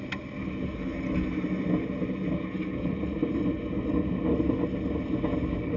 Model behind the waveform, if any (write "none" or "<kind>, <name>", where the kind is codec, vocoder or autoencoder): none